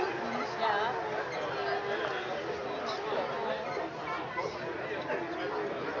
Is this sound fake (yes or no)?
no